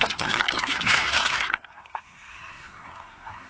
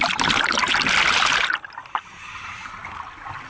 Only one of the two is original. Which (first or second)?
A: second